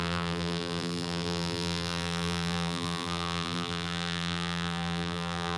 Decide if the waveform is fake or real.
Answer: fake